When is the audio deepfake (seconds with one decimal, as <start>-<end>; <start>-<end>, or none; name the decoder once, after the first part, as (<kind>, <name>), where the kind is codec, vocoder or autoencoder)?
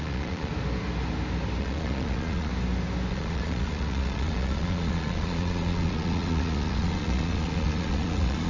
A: 0.0-0.5 (vocoder, Vocos); 1.6-2.5; 3.1-8.5